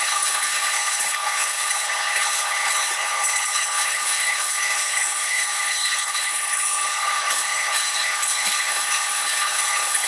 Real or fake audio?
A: fake